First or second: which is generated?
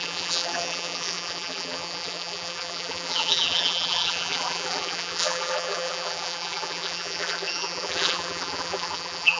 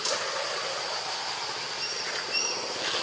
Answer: first